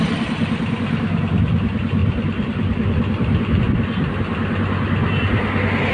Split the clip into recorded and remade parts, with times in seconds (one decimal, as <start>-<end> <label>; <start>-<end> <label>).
0.0-5.9 recorded

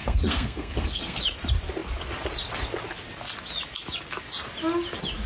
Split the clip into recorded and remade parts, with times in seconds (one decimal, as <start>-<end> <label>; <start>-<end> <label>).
0.0-1.2 remade; 1.2-5.3 recorded

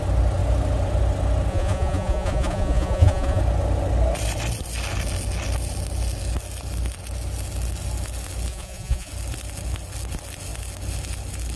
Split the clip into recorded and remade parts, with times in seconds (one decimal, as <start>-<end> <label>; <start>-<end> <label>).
0.0-1.5 recorded; 1.5-3.4 remade; 3.4-8.5 recorded; 8.5-9.1 remade; 9.1-11.6 recorded

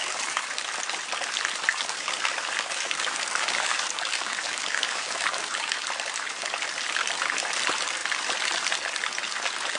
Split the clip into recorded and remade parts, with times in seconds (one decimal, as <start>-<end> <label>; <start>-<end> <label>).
0.0-0.6 remade; 0.6-1.7 recorded; 1.7-5.8 remade; 5.8-9.8 recorded

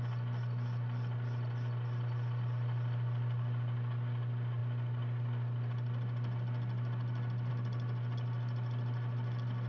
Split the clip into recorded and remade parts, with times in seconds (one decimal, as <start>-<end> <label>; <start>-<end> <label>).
0.0-9.7 recorded